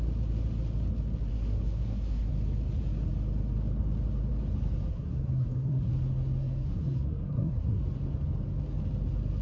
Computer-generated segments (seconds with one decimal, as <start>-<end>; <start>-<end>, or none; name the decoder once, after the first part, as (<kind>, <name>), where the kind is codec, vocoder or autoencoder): 1.3-2.3 (codec, SNAC); 4.9-5.9; 6.4-7.8